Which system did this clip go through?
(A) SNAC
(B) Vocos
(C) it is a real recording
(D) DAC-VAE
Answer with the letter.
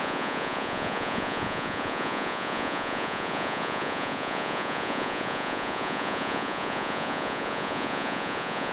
B